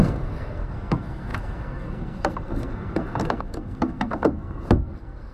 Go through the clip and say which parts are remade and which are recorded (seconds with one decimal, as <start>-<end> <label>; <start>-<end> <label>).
0.0-5.3 remade